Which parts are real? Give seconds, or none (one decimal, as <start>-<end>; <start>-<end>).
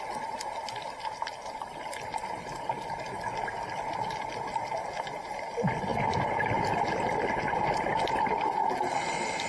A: 0.0-9.5